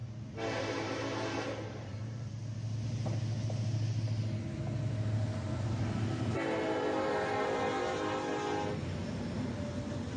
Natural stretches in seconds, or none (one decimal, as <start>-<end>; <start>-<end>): 2.3-10.2